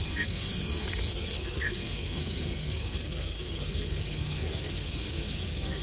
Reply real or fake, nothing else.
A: fake